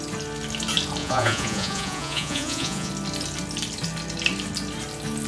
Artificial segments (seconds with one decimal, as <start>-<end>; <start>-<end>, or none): 1.0-2.9